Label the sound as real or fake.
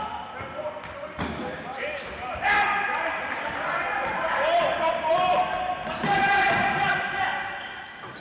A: real